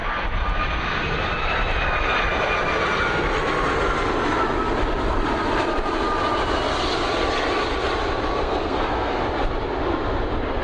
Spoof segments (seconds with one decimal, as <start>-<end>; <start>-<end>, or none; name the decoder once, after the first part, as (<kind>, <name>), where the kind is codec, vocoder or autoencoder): 8.4-9.2 (codec, SNAC)